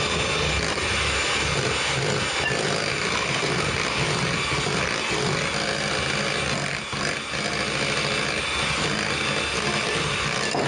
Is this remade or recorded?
recorded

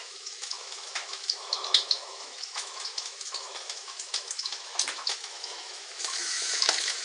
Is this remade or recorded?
remade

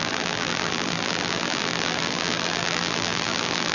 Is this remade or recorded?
remade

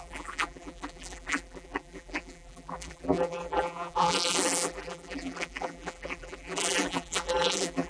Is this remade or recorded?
remade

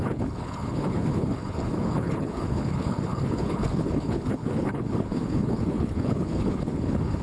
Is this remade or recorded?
remade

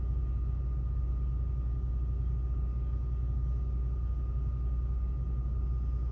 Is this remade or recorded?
recorded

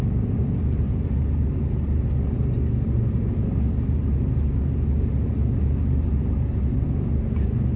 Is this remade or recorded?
remade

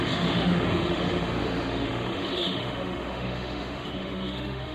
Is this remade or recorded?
remade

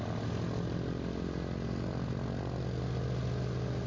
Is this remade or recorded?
recorded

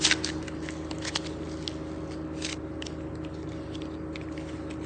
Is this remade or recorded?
recorded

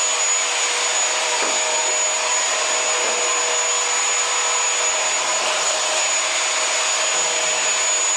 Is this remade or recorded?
recorded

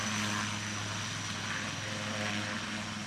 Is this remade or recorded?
recorded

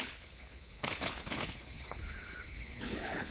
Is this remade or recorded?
remade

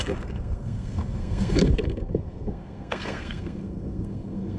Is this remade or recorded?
remade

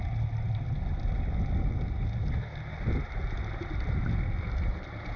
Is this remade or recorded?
recorded